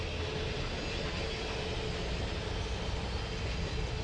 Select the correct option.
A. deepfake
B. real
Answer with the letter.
B